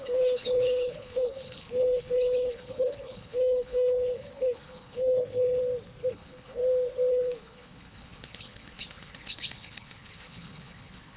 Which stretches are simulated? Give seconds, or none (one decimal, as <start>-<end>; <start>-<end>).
0.0-5.6; 6.1-6.6; 7.1-11.2